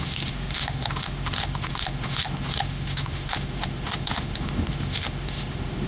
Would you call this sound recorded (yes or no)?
no